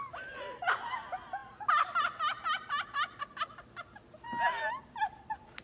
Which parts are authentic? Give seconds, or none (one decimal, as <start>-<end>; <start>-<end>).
0.0-5.6